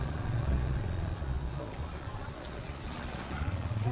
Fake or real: fake